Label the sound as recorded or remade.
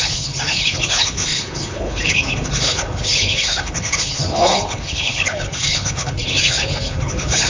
remade